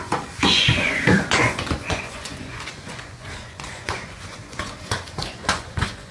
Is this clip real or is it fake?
fake